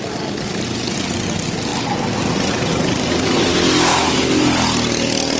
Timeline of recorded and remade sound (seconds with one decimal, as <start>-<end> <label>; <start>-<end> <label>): 0.0-3.9 recorded; 3.9-4.4 remade; 4.4-5.4 recorded